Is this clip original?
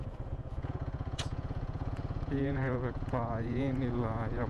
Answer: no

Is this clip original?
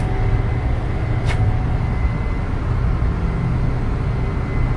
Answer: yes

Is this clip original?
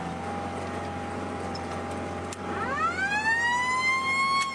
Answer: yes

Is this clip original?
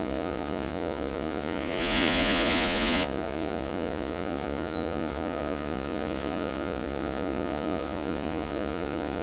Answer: no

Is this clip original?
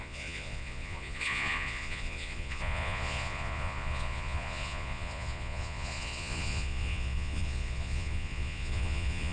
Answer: no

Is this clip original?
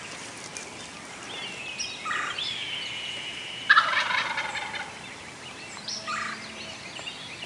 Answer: yes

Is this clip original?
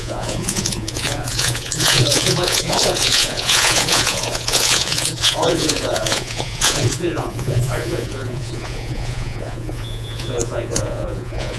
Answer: no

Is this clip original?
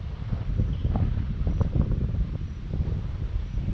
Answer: yes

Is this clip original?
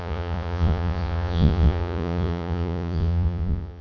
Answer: no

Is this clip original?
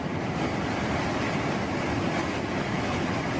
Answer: yes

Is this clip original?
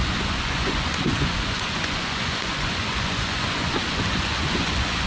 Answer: no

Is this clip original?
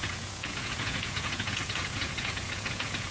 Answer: no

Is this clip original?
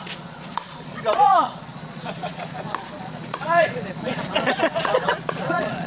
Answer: no